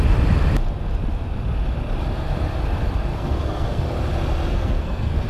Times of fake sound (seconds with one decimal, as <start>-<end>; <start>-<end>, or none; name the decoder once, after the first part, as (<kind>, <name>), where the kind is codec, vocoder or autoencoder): 3.1-3.8 (codec, SNAC); 4.5-5.3